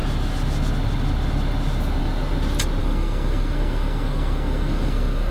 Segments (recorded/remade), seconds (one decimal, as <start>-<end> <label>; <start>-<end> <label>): 0.0-2.8 recorded; 2.8-5.3 remade